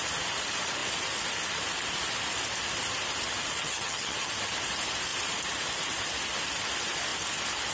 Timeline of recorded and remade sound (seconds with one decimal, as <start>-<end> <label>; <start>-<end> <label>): 0.0-3.6 recorded; 3.6-4.3 remade; 4.3-7.7 recorded